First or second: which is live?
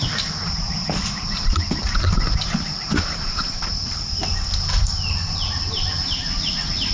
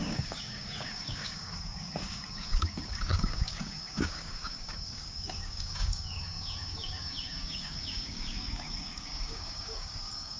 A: first